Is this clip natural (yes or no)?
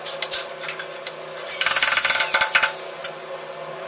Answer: yes